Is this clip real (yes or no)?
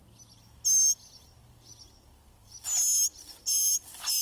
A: yes